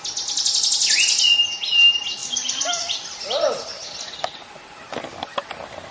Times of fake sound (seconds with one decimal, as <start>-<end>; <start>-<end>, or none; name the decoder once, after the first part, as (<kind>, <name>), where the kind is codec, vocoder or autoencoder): none